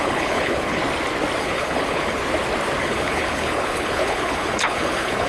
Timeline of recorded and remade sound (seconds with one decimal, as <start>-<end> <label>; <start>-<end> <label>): 0.0-0.8 remade; 0.8-1.4 recorded; 1.4-2.2 remade; 2.2-2.8 recorded; 2.8-5.3 remade